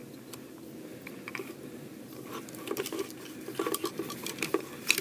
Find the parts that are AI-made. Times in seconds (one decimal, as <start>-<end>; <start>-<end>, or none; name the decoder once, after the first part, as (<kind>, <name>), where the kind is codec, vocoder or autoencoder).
3.0-5.0 (vocoder, BigVGAN v2)

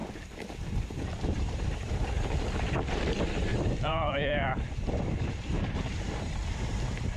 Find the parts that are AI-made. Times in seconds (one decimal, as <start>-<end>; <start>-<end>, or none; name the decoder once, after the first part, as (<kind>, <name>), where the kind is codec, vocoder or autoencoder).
0.0-3.0 (vocoder, BigVGAN v2); 3.5-6.2

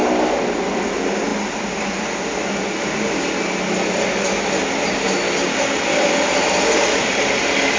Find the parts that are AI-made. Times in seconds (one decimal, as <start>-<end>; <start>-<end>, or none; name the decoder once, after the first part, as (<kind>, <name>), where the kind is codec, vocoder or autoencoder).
none

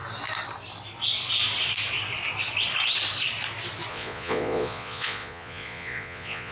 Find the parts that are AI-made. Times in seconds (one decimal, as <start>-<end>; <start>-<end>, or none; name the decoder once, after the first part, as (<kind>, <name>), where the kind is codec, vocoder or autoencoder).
3.9-6.5 (vocoder, Vocos)

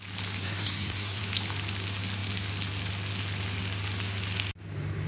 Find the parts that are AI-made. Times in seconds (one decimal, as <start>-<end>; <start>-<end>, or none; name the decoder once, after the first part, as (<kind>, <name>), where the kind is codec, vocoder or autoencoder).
0.4-1.2 (codec, SNAC)

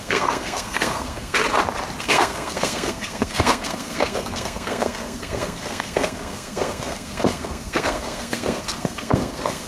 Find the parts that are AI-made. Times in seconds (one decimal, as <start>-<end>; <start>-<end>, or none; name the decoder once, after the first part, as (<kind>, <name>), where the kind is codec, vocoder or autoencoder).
0.0-1.4 (codec, SNAC); 2.0-9.7